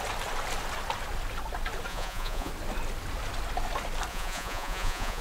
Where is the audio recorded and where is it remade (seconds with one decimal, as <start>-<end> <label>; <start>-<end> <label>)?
0.0-1.9 recorded; 1.9-2.5 remade; 2.5-4.1 recorded; 4.1-5.2 remade